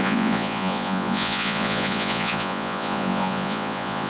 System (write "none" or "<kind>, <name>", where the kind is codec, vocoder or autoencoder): vocoder, Vocos